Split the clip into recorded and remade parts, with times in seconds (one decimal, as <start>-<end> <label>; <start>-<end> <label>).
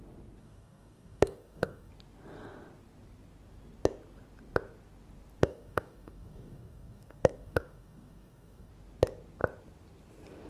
0.0-0.4 recorded; 0.4-1.9 remade; 1.9-5.4 recorded; 5.4-8.7 remade; 8.7-10.5 recorded